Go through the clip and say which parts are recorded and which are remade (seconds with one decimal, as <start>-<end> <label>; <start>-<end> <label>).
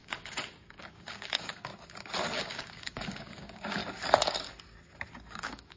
0.0-1.7 remade; 1.7-2.4 recorded; 2.4-3.8 remade; 3.8-5.2 recorded; 5.2-5.8 remade